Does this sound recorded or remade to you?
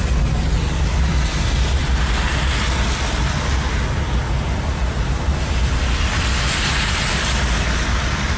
recorded